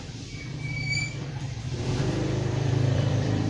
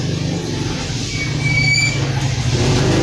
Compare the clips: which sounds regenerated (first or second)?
first